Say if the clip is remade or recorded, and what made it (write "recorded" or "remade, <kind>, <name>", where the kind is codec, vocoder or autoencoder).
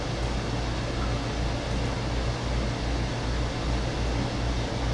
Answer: recorded